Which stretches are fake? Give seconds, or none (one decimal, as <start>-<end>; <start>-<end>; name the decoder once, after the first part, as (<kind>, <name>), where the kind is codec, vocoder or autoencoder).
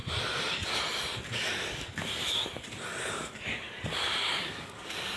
3.1-5.2 (codec, DAC)